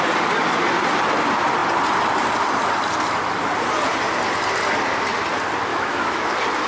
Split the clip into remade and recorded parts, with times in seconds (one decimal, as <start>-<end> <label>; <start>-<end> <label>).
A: 0.0-5.7 recorded; 5.7-6.3 remade; 6.3-6.7 recorded